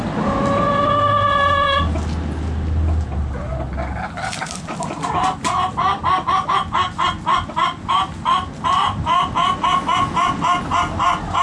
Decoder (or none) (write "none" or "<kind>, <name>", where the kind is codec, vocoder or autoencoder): none